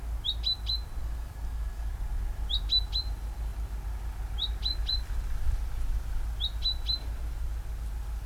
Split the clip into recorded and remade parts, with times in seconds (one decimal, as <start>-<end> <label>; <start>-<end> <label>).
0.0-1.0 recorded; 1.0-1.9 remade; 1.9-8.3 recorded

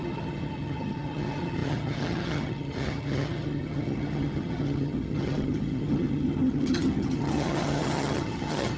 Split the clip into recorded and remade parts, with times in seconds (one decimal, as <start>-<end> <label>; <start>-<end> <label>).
0.0-8.8 remade

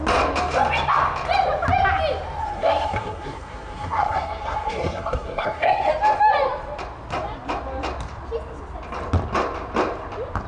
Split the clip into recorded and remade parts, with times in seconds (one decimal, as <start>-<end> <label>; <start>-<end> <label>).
0.0-2.4 recorded; 2.4-5.9 remade; 5.9-10.5 recorded

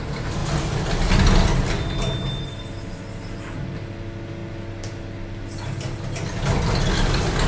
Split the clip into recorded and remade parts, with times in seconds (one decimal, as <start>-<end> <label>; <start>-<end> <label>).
0.0-7.5 recorded

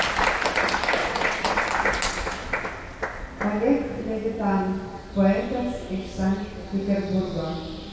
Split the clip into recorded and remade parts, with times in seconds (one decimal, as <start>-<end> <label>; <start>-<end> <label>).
0.0-1.0 recorded; 1.0-1.7 remade; 1.7-7.9 recorded

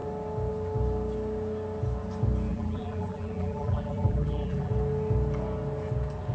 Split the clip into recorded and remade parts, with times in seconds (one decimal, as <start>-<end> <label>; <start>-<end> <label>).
0.0-2.5 recorded; 2.5-4.7 remade; 4.7-6.3 recorded

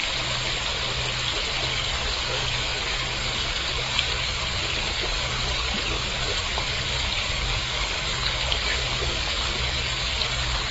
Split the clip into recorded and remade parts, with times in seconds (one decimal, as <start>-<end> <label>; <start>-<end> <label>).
0.0-1.7 recorded; 1.7-10.7 remade

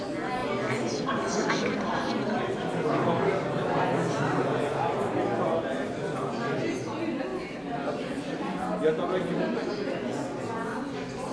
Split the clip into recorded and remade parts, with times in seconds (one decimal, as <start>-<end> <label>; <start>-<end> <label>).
0.0-11.3 recorded